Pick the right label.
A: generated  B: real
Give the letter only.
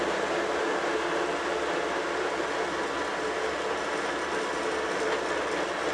B